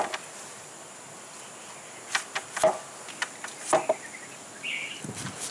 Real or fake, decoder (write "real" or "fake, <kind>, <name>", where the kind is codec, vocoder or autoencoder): real